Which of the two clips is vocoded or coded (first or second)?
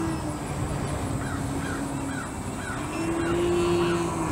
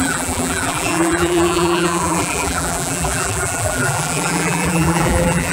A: second